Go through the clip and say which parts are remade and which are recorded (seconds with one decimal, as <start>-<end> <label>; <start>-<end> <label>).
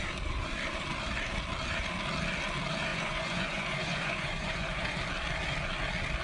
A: 0.0-2.9 recorded; 2.9-4.9 remade; 4.9-6.2 recorded